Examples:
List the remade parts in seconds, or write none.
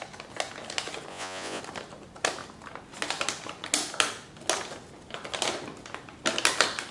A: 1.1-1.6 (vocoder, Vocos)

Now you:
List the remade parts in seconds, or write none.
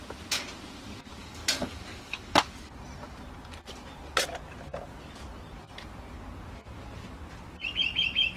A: 1.2-2.4 (codec, DAC)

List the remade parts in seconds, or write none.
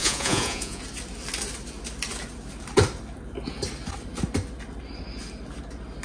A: 0.0-0.8 (vocoder, Vocos)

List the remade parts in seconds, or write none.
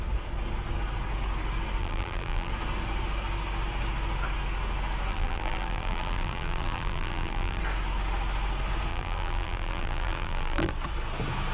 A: 1.8-2.5 (vocoder, BigVGAN v2); 5.1-7.6; 8.9-10.7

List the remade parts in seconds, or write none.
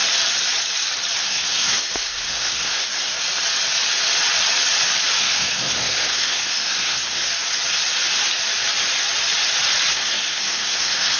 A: 1.2-3.2 (codec, SNAC); 5.2-7.3; 9.9-11.2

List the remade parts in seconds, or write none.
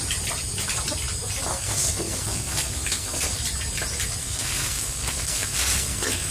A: 1.5-3.3 (codec, SNAC); 4.2-6.3